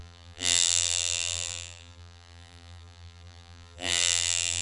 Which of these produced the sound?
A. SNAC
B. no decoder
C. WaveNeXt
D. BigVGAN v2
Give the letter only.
D